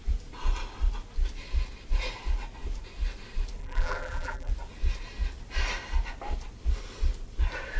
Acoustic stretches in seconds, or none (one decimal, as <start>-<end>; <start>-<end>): 0.0-3.6; 4.5-7.8